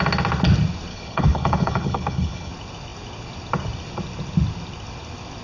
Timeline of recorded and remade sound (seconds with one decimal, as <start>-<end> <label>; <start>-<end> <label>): 0.0-0.9 recorded; 0.9-2.5 remade; 2.5-5.4 recorded